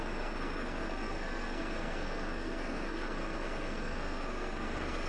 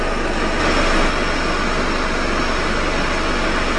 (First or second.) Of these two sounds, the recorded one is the second